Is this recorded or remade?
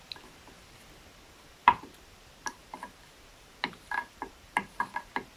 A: remade